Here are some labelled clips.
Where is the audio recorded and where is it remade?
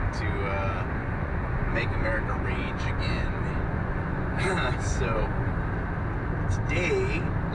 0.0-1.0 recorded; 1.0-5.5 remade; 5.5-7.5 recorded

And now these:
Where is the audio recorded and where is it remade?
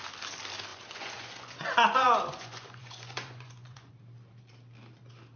0.0-0.7 recorded; 0.7-3.9 remade; 3.9-5.4 recorded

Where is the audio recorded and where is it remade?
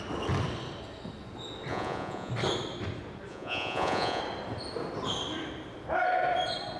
0.0-1.7 recorded; 1.7-2.3 remade; 2.3-3.3 recorded; 3.3-4.2 remade; 4.2-6.8 recorded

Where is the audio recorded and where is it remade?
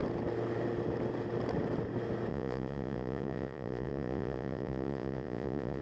0.0-2.3 recorded; 2.3-5.8 remade